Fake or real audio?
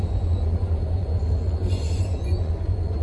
fake